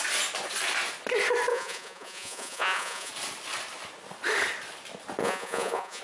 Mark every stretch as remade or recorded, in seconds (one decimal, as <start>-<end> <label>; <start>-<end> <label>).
0.0-1.5 recorded; 1.5-3.1 remade; 3.1-5.2 recorded; 5.2-6.0 remade